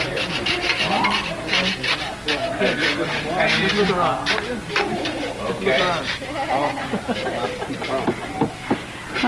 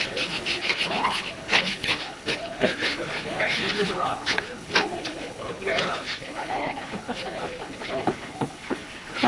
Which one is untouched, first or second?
first